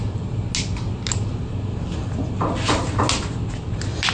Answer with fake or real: real